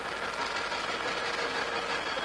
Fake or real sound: real